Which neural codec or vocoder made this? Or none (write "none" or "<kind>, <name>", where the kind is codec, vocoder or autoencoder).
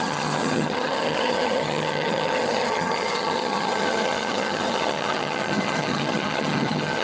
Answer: vocoder, HiFi-GAN